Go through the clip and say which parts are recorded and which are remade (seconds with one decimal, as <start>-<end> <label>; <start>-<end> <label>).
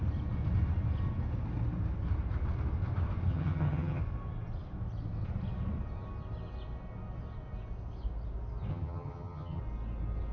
0.0-3.3 recorded; 3.3-4.0 remade; 4.0-8.7 recorded; 8.7-9.6 remade; 9.6-10.3 recorded